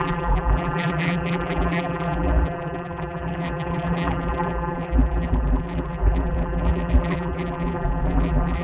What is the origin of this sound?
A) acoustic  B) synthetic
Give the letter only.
B